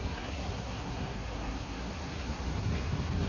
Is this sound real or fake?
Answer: fake